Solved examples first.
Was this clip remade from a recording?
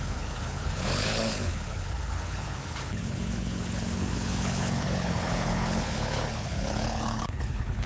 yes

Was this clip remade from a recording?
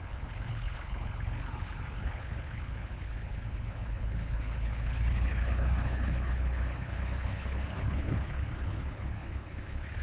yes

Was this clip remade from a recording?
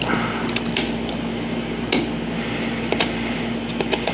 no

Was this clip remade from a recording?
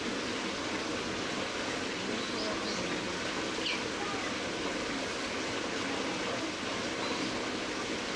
no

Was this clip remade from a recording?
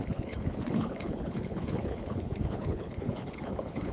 yes